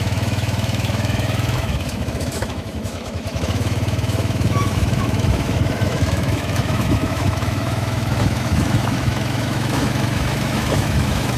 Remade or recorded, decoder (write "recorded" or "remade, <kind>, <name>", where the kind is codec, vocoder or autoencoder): remade, autoencoder, DAC-VAE